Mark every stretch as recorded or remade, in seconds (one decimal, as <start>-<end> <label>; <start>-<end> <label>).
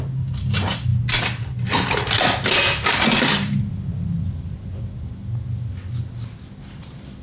0.0-7.2 recorded